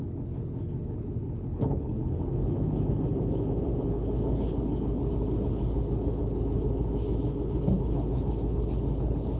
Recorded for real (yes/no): no